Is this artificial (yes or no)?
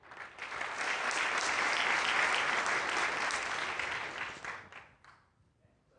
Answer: no